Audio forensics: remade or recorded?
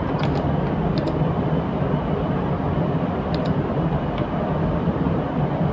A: recorded